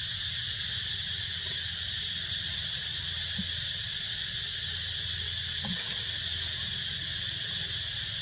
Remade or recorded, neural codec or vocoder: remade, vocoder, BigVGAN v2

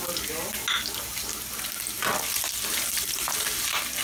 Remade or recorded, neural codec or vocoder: recorded